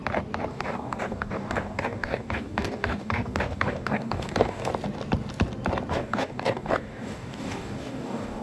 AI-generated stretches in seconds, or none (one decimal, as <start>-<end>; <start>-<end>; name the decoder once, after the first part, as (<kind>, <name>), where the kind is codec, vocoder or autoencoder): 0.5-4.7 (codec, DAC); 5.9-8.4